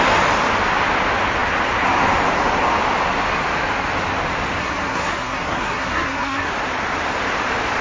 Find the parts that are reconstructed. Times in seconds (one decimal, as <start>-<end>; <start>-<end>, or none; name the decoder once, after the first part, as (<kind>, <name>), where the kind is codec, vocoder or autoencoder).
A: 4.6-6.5 (codec, SNAC)